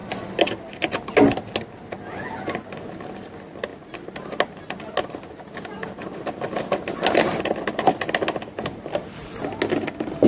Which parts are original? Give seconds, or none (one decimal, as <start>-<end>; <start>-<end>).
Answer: 0.0-10.3